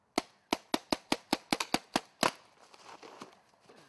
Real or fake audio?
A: real